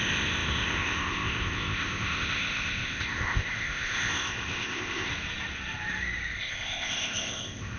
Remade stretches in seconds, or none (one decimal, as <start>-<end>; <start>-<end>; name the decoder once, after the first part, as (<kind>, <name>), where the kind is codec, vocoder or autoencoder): 0.0-5.1 (codec, ZipCodec); 6.4-7.8